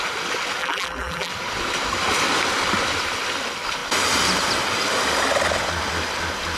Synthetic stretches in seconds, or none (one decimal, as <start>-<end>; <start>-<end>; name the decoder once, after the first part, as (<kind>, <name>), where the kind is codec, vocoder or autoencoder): 0.6-1.3 (vocoder, BigVGAN v2)